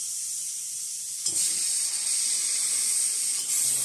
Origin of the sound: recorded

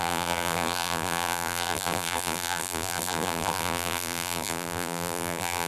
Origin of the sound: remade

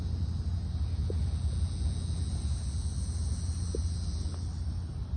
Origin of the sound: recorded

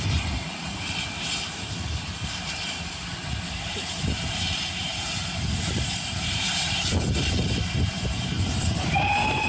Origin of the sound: remade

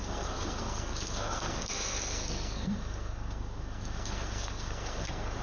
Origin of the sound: remade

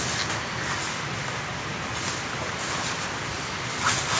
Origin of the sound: recorded